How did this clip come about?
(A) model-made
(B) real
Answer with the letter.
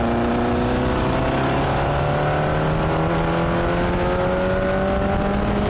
B